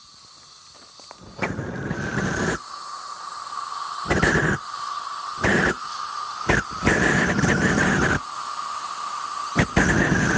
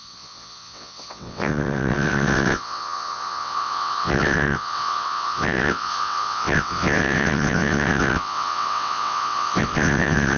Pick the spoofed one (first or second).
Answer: second